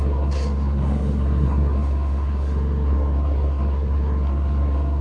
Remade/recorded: remade